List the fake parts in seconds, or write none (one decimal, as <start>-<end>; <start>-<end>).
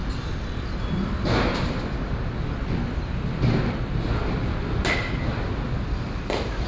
none